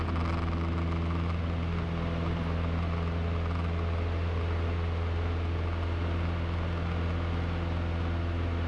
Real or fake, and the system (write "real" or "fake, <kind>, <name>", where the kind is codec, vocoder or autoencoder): real